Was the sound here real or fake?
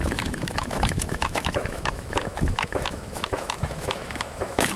fake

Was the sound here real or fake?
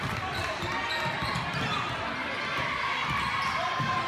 real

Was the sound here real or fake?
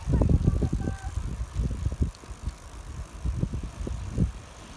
real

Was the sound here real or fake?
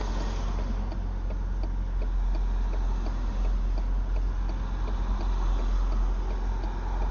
real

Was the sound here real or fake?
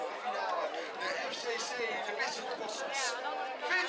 real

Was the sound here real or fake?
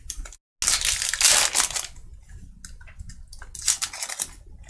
real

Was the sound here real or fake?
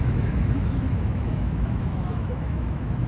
fake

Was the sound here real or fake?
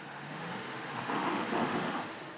fake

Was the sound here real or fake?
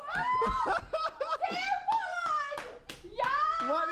real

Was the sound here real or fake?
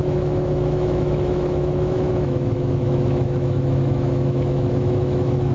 fake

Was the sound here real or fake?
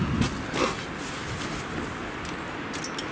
real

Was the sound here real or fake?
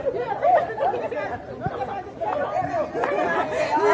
real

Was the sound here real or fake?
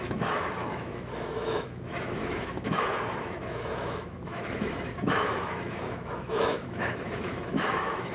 fake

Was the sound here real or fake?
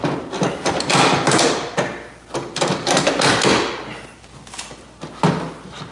real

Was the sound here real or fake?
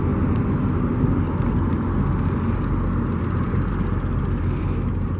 real